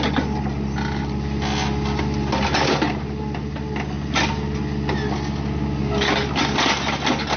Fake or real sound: real